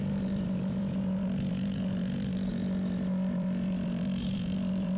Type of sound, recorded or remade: remade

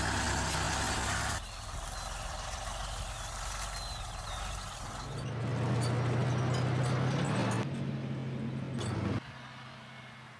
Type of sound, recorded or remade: recorded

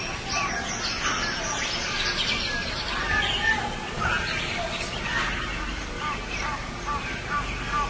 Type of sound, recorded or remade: recorded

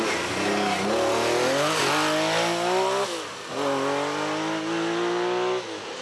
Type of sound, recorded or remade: recorded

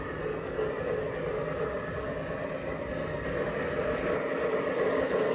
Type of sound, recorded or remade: recorded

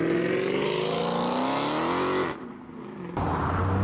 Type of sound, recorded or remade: recorded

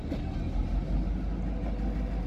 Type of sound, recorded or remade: recorded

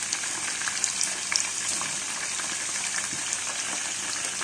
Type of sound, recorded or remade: recorded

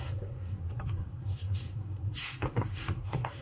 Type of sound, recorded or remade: remade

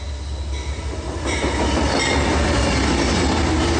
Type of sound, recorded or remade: recorded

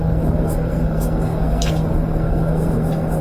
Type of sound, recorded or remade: remade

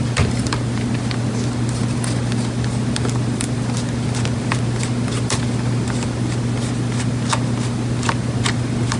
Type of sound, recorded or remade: remade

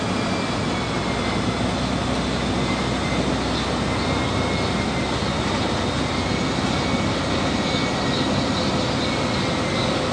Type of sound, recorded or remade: recorded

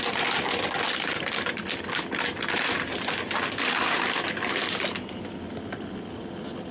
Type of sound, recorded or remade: recorded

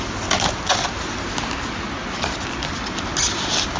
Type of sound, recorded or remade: recorded